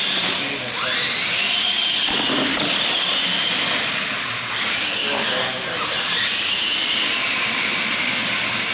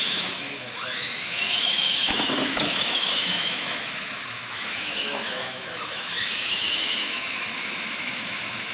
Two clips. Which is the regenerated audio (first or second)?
second